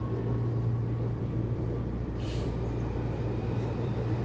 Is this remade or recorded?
remade